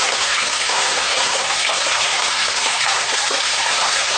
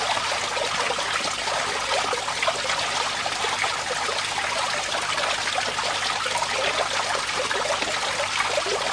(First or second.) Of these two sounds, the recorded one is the second